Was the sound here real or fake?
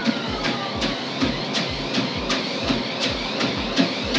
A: real